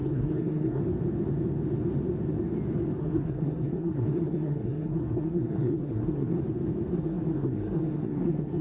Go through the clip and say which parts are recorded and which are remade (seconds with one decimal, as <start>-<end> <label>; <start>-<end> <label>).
0.0-0.8 remade; 0.8-3.0 recorded; 3.0-6.4 remade; 6.4-6.9 recorded; 6.9-8.6 remade